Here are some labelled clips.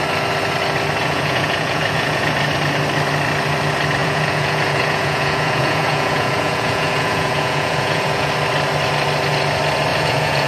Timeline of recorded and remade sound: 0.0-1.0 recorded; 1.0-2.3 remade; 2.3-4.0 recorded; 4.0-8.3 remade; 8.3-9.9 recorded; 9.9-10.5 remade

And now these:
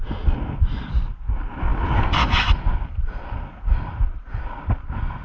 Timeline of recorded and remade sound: 0.0-5.2 recorded

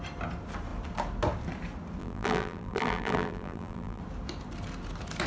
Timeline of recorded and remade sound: 0.0-2.0 recorded; 2.0-4.0 remade; 4.0-5.3 recorded

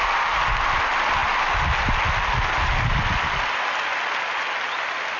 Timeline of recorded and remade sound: 0.0-5.2 recorded